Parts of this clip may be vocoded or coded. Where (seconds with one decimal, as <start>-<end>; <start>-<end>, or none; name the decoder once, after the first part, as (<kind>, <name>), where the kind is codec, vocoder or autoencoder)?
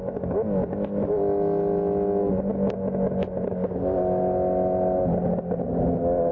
none